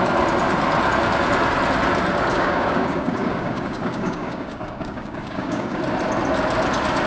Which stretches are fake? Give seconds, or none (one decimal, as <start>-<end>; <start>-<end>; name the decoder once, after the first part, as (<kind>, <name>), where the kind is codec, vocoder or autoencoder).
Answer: 2.3-5.8 (codec, DAC)